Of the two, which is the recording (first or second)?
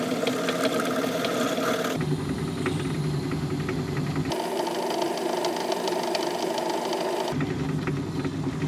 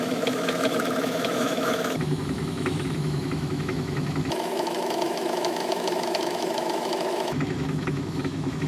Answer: first